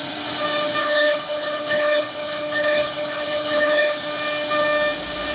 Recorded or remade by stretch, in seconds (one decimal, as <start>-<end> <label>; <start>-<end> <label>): 0.0-0.8 recorded; 0.8-4.0 remade; 4.0-5.3 recorded